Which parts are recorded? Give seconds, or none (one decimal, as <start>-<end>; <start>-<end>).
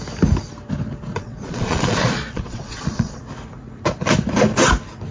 0.0-1.1; 3.2-5.1